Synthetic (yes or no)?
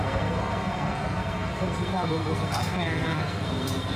yes